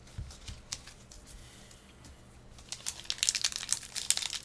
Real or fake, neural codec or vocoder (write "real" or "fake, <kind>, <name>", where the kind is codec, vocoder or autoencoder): real